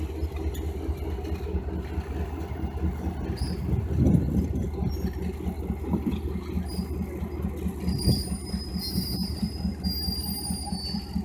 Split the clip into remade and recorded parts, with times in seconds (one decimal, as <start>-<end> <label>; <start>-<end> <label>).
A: 0.0-11.2 recorded